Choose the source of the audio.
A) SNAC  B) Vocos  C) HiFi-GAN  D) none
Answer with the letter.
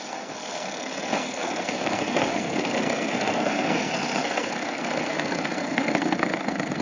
A